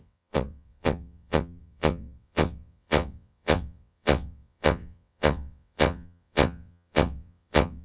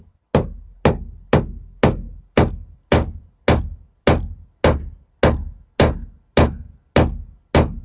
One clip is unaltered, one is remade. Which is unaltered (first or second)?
second